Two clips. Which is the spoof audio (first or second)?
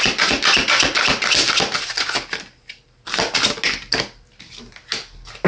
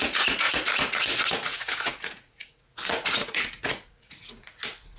second